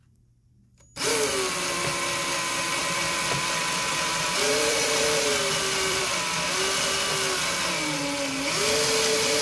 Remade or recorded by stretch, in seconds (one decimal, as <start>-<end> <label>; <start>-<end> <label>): 0.0-2.8 recorded; 2.8-6.0 remade; 6.0-9.4 recorded

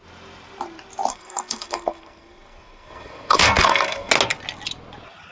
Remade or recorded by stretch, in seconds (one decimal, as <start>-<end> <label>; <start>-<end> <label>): 0.0-1.1 recorded; 1.1-4.1 remade; 4.1-5.3 recorded

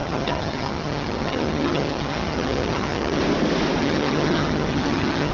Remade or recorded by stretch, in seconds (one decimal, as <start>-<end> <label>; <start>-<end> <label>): 0.0-3.2 remade; 3.2-3.8 recorded; 3.8-5.3 remade

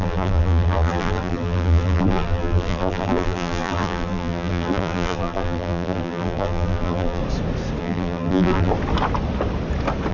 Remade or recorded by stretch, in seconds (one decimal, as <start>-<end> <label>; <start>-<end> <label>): 0.0-7.2 remade; 7.2-7.8 recorded; 7.8-8.7 remade; 8.7-10.1 recorded

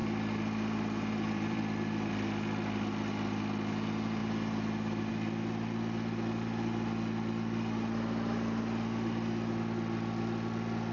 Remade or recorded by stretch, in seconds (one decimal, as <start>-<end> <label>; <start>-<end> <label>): 0.0-2.1 remade; 2.1-10.9 recorded

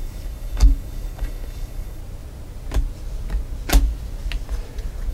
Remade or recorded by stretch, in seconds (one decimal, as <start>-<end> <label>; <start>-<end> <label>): 0.0-2.0 remade; 2.0-5.1 recorded

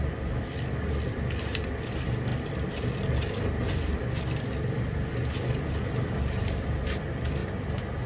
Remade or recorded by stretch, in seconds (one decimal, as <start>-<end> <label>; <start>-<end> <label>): 0.0-7.4 remade; 7.4-8.1 recorded